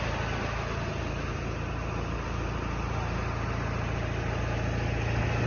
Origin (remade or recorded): recorded